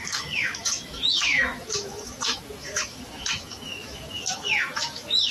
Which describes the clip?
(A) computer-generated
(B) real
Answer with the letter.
A